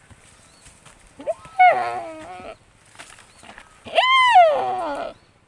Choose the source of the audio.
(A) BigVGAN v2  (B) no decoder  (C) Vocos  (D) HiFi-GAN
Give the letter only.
B